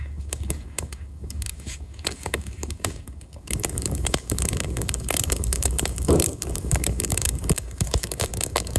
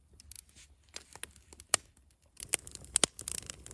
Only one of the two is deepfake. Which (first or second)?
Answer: first